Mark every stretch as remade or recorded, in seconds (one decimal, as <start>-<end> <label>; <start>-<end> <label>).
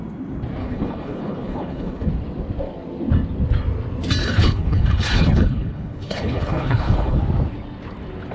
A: 0.0-0.6 recorded; 0.6-2.1 remade; 2.1-4.2 recorded; 4.2-7.2 remade; 7.2-8.3 recorded